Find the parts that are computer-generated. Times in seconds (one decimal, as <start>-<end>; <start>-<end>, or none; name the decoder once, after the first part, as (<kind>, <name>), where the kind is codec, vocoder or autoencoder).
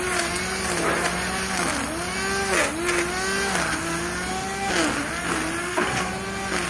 5.6-6.1 (codec, SNAC)